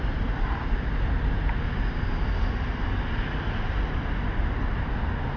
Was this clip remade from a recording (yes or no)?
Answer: no